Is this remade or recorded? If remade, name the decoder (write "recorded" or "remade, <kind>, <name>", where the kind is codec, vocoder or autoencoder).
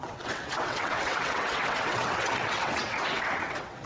remade, vocoder, WaveNeXt